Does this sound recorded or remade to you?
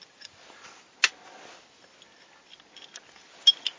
recorded